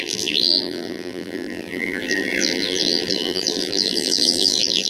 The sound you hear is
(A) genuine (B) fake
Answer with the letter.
B